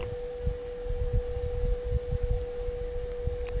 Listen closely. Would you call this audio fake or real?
real